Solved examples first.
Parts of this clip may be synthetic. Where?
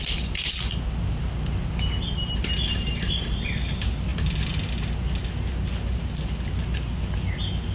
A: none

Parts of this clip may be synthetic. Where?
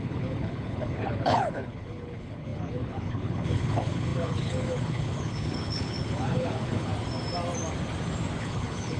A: 0.0-6.9; 8.4-9.0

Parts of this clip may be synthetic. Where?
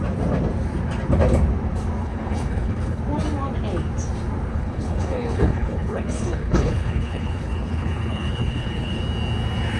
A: 2.0-3.0; 4.5-9.0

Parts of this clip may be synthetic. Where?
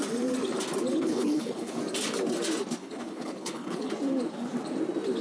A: 0.9-1.8; 2.8-3.9